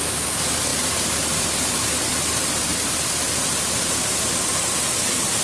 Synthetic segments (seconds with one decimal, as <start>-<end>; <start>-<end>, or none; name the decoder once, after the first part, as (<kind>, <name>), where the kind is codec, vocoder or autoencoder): none